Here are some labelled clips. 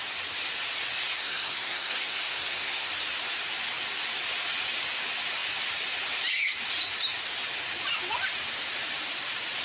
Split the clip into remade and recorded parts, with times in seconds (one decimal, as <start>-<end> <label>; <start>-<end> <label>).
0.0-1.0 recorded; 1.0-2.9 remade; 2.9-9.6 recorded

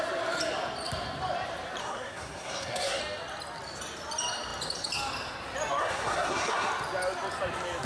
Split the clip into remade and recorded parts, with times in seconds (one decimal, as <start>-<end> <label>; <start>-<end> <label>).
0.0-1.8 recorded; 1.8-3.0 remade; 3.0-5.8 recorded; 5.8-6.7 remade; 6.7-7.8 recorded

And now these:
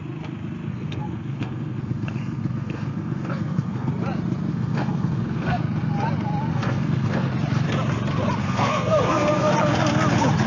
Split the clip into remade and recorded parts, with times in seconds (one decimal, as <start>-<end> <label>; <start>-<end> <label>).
0.0-0.7 recorded; 0.7-3.9 remade; 3.9-4.5 recorded; 4.5-5.6 remade; 5.6-6.5 recorded; 6.5-7.3 remade; 7.3-8.4 recorded; 8.4-9.5 remade; 9.5-10.5 recorded

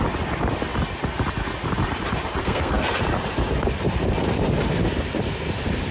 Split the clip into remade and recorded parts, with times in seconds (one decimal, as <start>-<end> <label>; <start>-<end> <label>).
0.0-2.4 recorded; 2.4-2.9 remade; 2.9-5.9 recorded

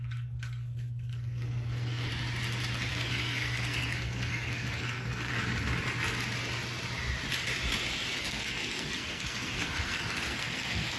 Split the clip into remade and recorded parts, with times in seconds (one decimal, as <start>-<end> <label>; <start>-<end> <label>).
0.0-2.1 remade; 2.1-2.9 recorded; 2.9-5.3 remade; 5.3-8.2 recorded; 8.2-11.0 remade